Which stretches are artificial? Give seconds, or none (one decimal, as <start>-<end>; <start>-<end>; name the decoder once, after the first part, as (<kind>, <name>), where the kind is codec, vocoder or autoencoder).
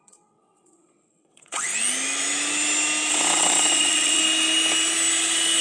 0.0-1.7 (vocoder, WaveNeXt); 3.1-4.2